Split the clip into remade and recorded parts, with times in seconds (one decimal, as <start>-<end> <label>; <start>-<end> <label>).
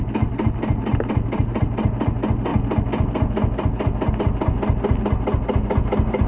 0.0-6.3 recorded